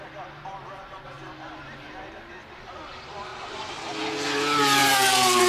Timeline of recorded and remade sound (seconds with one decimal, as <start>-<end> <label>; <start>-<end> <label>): 0.0-3.3 recorded; 3.3-3.8 remade; 3.8-4.8 recorded; 4.8-5.5 remade